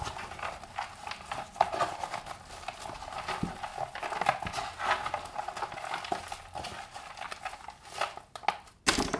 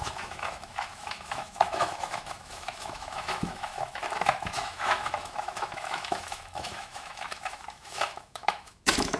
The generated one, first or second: second